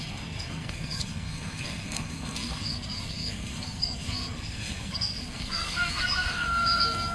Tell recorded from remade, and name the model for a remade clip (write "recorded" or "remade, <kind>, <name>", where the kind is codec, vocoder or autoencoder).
remade, codec, SNAC